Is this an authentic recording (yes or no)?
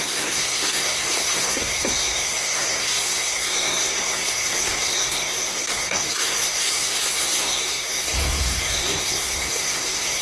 no